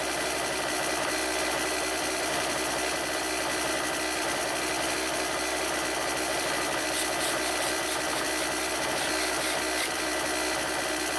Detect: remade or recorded remade